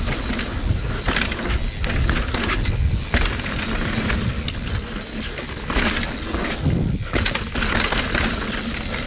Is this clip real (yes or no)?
yes